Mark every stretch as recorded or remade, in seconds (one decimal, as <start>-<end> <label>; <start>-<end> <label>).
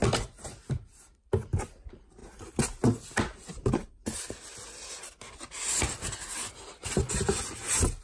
0.0-8.0 recorded